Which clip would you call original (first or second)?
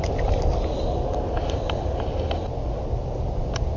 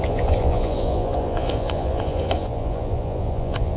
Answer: first